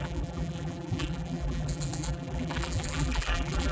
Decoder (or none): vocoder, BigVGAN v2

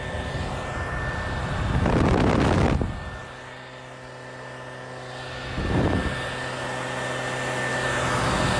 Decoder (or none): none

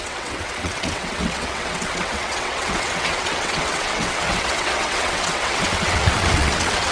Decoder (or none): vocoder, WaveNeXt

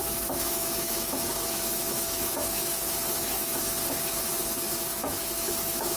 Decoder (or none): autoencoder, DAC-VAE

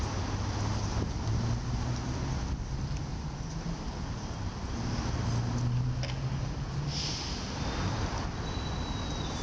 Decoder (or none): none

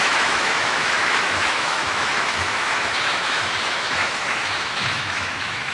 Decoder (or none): autoencoder, DAC-VAE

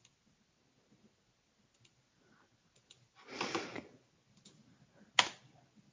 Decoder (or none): none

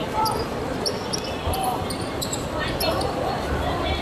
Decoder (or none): vocoder, BigVGAN v2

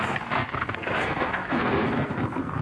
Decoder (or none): codec, SNAC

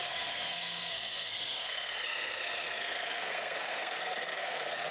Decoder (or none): codec, SNAC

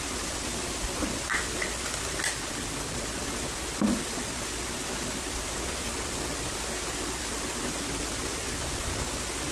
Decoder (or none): none